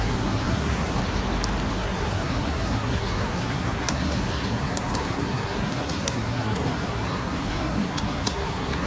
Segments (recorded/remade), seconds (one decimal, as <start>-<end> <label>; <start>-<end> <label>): 0.0-1.0 remade; 1.0-1.7 recorded; 1.7-8.9 remade